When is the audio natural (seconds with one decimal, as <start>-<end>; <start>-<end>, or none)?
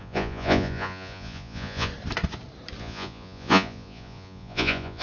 1.9-2.8